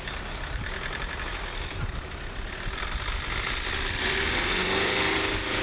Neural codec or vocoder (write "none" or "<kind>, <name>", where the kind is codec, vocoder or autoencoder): vocoder, BigVGAN v2